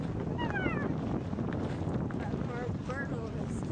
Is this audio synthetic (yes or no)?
no